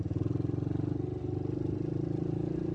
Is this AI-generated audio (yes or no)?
no